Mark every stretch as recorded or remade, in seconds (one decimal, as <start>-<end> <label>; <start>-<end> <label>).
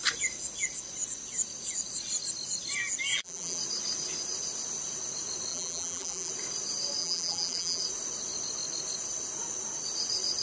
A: 0.0-3.1 recorded; 3.1-3.6 remade; 3.6-5.5 recorded; 5.5-6.3 remade; 6.3-7.0 recorded; 7.0-7.8 remade; 7.8-10.4 recorded